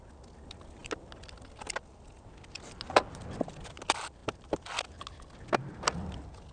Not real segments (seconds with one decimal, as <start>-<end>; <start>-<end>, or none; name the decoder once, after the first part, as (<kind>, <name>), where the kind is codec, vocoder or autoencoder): none